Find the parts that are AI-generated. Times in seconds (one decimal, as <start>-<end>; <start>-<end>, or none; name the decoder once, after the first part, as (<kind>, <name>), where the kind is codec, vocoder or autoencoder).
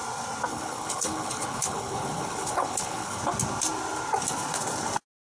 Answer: 0.5-3.2 (codec, HILCodec)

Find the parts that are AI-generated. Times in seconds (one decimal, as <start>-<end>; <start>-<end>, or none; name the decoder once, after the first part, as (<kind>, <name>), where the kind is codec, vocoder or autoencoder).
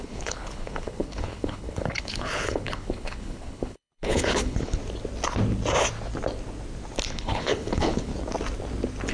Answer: 0.0-4.8 (codec, HILCodec); 7.1-8.1